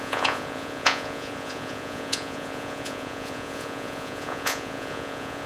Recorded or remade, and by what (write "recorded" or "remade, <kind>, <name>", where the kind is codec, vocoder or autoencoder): remade, vocoder, Vocos